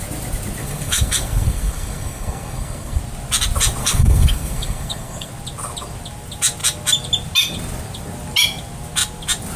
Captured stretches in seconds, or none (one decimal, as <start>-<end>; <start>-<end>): 0.0-0.6; 3.0-3.8; 5.3-9.6